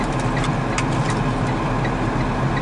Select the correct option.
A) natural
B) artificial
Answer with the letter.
A